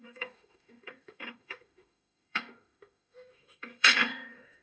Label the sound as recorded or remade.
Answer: remade